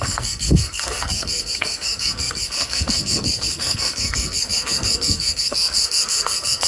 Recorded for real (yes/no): no